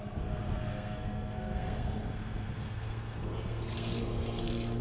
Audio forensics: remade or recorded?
remade